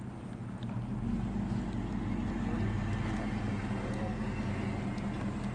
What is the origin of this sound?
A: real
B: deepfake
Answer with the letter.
A